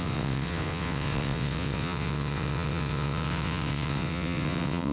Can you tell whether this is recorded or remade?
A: remade